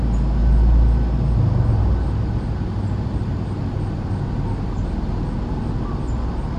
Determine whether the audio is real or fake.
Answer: real